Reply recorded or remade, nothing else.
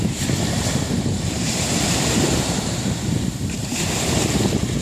remade